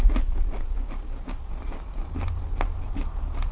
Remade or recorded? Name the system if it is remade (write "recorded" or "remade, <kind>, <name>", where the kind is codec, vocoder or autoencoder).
recorded